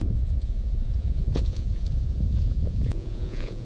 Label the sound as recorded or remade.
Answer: remade